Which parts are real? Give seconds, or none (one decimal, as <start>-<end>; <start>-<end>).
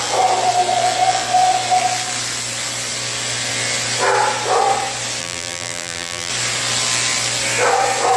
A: 0.0-5.2; 6.3-8.2